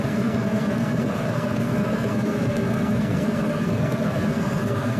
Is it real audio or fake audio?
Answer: fake